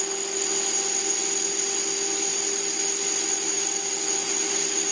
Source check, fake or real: real